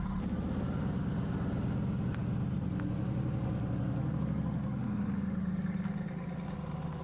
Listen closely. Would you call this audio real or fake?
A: real